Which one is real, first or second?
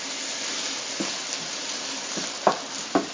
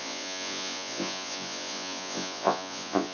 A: first